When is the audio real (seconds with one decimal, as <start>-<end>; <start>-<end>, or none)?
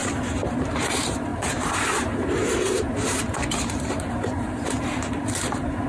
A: 0.0-0.5